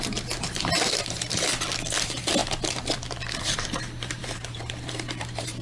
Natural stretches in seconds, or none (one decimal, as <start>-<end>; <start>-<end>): 1.5-2.0; 2.4-3.4

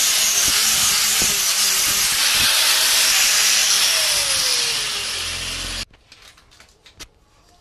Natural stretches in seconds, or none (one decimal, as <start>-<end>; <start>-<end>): 0.0-7.6

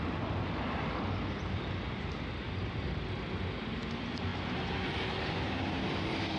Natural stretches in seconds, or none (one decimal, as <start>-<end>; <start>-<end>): 0.0-6.4

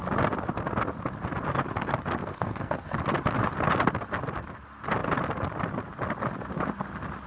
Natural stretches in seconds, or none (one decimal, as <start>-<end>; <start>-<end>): 0.0-2.2; 3.0-7.3

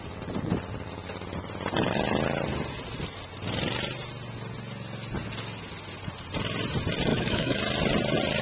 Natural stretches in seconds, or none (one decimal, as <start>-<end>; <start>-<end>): 0.0-7.1; 7.6-8.4

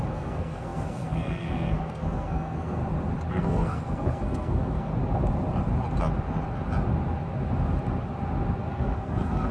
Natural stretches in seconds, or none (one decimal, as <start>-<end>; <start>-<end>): 2.8-3.3; 4.9-8.7